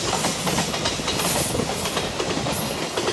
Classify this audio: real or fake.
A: real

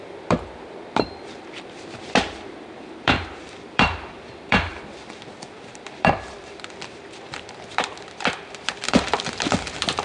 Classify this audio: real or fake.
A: fake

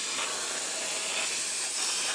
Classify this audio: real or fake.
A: real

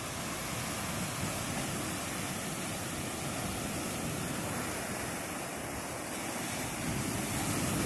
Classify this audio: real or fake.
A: real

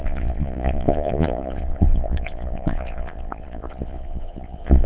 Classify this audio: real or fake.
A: fake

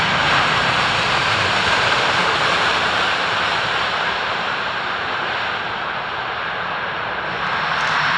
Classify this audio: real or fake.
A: fake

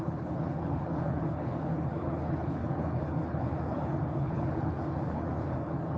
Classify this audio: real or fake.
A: fake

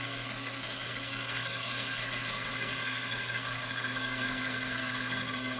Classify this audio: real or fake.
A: fake